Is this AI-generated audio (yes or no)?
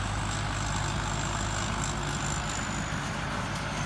no